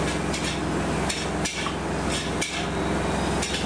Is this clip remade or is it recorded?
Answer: recorded